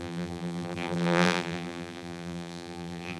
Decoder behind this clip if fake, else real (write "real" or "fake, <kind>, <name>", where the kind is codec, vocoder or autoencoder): fake, vocoder, BigVGAN v2